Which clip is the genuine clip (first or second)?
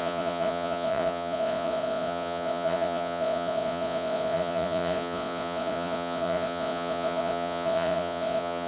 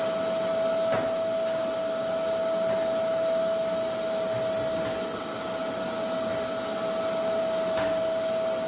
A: second